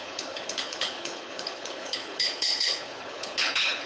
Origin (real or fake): fake